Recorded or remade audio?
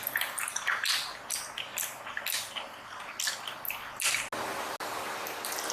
recorded